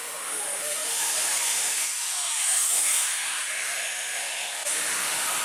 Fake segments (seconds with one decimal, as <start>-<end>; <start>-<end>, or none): 0.0-5.4

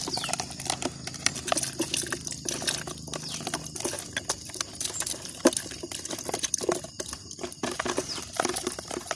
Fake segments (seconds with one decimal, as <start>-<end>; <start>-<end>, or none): none

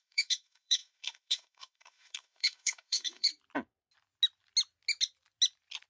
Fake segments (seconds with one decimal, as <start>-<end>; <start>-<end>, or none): 0.0-3.3

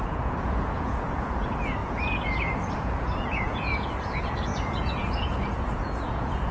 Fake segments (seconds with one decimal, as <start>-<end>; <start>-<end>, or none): 0.0-6.5

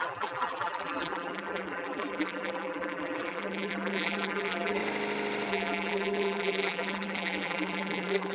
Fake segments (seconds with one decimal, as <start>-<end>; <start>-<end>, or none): 0.0-4.8; 5.5-8.3

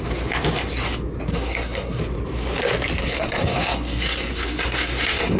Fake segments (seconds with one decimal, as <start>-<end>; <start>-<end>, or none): 1.3-2.0; 3.0-5.4